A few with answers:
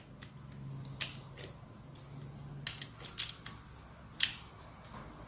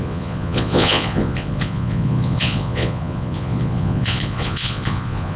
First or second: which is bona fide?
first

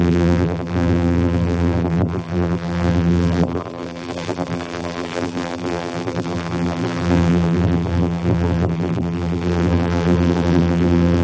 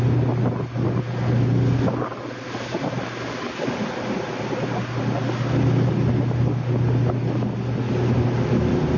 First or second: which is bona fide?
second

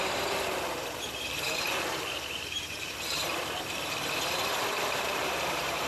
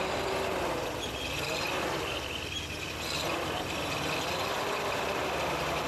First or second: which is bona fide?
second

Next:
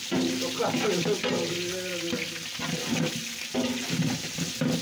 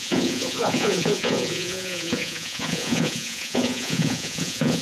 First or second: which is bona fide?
first